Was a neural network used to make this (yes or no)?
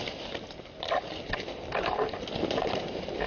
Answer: no